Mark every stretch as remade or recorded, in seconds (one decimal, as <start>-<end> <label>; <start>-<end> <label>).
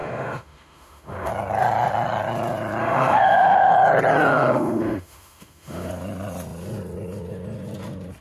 0.0-1.3 remade; 1.3-2.8 recorded; 2.8-3.7 remade; 3.7-4.3 recorded; 4.3-5.9 remade; 5.9-8.2 recorded